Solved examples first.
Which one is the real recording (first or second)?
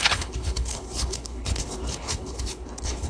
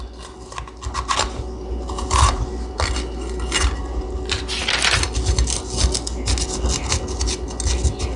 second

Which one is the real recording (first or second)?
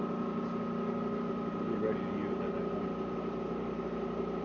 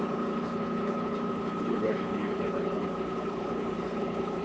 first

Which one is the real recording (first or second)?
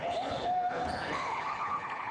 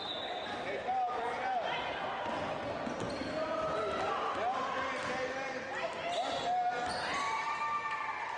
second